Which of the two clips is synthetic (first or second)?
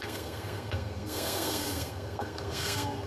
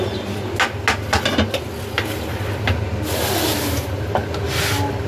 first